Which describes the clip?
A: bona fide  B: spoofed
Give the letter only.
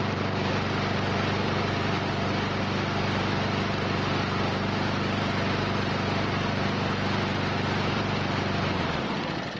B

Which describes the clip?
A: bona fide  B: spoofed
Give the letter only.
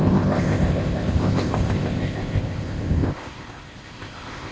B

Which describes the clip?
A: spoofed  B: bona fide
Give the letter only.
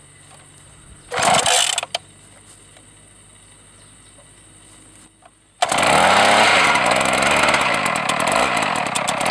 B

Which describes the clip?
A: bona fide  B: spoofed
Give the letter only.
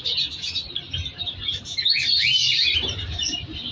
A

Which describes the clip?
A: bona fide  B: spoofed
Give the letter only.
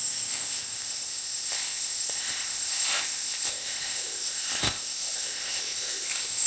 B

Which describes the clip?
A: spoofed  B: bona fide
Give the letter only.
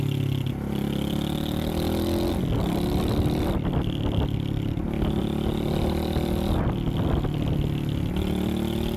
B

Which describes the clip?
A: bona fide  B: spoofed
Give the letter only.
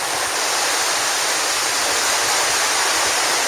A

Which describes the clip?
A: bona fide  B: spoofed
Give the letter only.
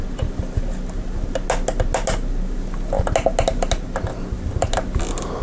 A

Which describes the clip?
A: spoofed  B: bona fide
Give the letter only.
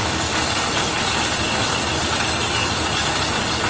B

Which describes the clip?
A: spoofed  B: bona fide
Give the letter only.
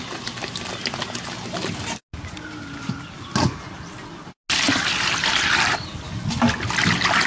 B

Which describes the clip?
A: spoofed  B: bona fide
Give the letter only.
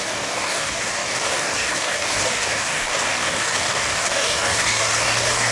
A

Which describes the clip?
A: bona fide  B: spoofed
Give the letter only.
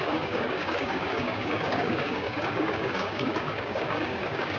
B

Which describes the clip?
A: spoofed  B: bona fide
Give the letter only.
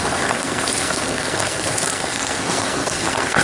A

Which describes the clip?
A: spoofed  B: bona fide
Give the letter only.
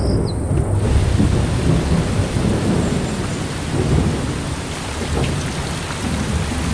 B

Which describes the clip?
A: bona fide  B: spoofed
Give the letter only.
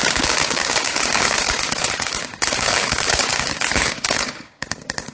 B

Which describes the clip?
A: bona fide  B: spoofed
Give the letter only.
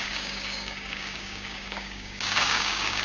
B